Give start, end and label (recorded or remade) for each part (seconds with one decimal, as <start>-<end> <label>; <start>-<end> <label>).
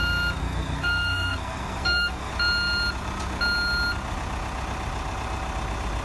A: 0.0-0.4 recorded; 0.4-2.3 remade; 2.3-6.0 recorded